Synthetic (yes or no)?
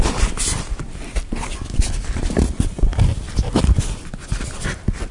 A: no